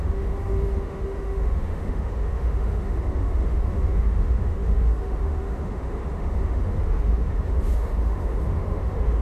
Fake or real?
fake